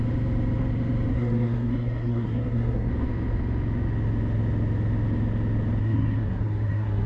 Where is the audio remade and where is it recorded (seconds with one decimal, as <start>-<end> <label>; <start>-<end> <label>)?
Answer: 0.0-1.1 recorded; 1.1-2.9 remade; 2.9-5.8 recorded; 5.8-7.1 remade